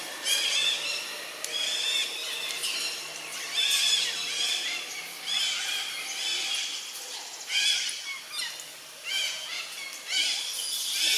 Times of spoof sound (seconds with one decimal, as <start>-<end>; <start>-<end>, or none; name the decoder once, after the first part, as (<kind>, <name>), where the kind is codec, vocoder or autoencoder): 9.1-9.6 (vocoder, Vocos)